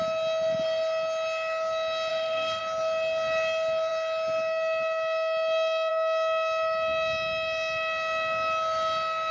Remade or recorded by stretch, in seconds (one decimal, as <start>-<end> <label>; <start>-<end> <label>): 0.0-2.1 recorded; 2.1-2.6 remade; 2.6-9.3 recorded